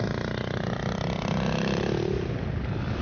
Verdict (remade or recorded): recorded